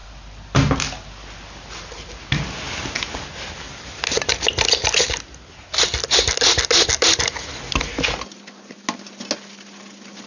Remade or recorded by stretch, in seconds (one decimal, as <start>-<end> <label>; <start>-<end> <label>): 0.0-10.3 recorded